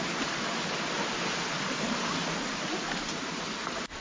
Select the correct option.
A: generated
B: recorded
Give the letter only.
B